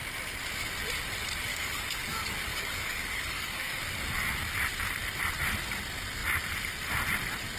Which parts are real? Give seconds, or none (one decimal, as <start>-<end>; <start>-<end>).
0.0-1.5; 3.8-7.6